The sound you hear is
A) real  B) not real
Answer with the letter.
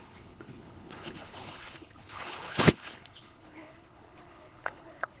B